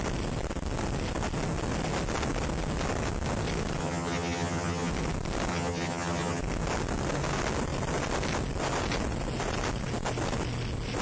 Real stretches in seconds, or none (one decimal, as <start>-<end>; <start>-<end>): 0.0-3.8; 4.9-5.5; 6.4-11.0